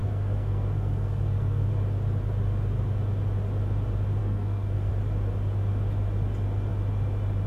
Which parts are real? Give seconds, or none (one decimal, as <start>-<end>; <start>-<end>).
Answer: 1.7-4.2; 4.9-7.5